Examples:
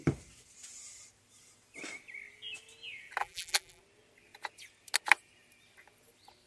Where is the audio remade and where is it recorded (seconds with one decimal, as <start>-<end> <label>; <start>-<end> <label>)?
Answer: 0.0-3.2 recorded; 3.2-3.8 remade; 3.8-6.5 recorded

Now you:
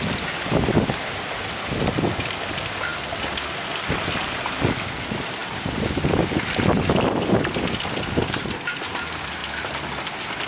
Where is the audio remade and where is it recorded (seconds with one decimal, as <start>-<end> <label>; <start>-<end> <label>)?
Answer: 0.0-5.4 recorded; 5.4-6.7 remade; 6.7-10.5 recorded

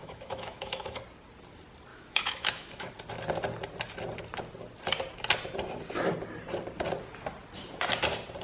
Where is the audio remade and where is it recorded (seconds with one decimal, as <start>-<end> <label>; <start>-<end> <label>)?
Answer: 0.0-1.0 remade; 1.0-1.9 recorded; 1.9-2.9 remade; 2.9-8.4 recorded

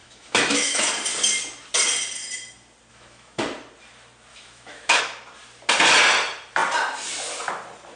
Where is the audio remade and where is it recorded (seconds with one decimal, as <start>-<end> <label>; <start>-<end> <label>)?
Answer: 0.0-0.9 remade; 0.9-2.9 recorded; 2.9-3.4 remade; 3.4-4.3 recorded; 4.3-5.0 remade; 5.0-8.0 recorded

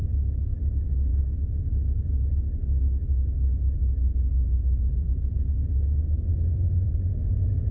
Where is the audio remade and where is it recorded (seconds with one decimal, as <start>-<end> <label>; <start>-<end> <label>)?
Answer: 0.0-6.3 recorded; 6.3-6.9 remade; 6.9-7.7 recorded

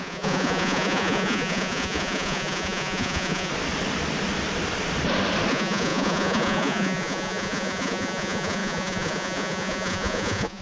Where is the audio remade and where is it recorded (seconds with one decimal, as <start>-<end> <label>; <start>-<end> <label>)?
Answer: 0.0-3.5 remade; 3.5-5.5 recorded; 5.5-10.6 remade

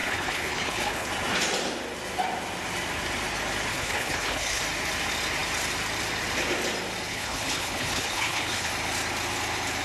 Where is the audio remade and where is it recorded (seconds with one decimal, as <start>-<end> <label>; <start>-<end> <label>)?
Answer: 0.0-1.1 remade; 1.1-3.7 recorded; 3.7-4.6 remade; 4.6-7.1 recorded; 7.1-8.7 remade; 8.7-9.8 recorded

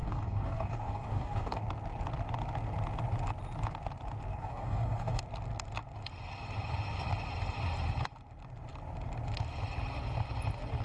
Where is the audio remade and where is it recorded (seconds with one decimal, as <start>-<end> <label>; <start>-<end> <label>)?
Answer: 0.0-1.6 remade; 1.6-4.3 recorded; 4.3-5.2 remade; 5.2-10.8 recorded